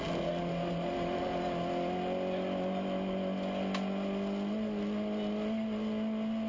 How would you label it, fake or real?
real